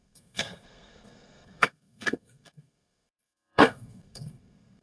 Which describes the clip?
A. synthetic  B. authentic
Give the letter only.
A